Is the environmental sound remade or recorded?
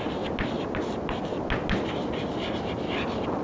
recorded